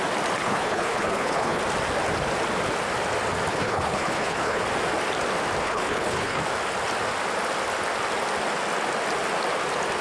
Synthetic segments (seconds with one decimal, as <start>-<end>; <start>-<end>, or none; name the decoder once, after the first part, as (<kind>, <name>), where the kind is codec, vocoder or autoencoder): 0.4-1.6 (codec, HILCodec); 3.5-4.6; 5.6-6.4

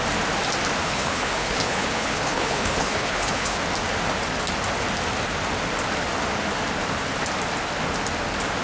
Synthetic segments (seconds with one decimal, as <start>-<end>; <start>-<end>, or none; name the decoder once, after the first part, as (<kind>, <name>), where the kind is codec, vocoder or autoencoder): 0.8-3.6 (codec, HILCodec)

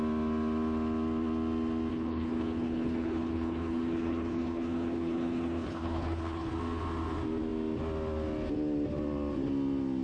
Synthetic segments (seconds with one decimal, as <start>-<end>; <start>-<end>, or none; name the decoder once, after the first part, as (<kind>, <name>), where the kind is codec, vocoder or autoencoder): 1.9-6.5 (codec, HILCodec)

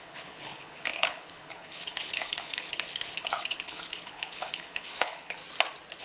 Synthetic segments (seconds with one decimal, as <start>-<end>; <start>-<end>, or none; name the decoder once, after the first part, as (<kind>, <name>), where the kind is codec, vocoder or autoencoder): 0.0-5.4 (codec, HILCodec)

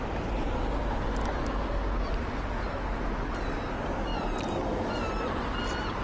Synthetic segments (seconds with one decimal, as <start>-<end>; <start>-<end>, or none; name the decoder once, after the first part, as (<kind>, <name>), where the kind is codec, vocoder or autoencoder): none

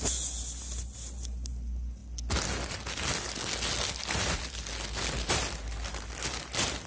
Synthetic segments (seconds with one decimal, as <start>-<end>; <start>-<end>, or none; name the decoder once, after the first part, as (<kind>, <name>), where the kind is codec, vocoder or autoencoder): none

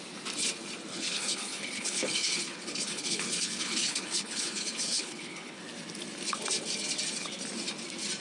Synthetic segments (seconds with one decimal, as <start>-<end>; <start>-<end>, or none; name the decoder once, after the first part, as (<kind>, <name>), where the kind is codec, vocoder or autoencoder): 0.9-5.6 (codec, HILCodec)